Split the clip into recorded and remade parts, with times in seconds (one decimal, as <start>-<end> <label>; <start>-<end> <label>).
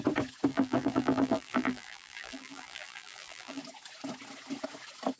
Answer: 0.0-0.5 recorded; 0.5-3.6 remade; 3.6-5.2 recorded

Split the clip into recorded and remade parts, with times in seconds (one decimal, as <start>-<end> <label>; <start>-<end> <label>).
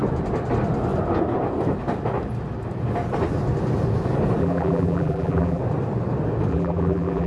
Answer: 0.0-4.4 recorded; 4.4-5.6 remade; 5.6-6.5 recorded; 6.5-7.3 remade